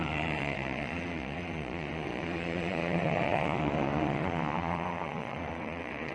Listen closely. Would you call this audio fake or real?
fake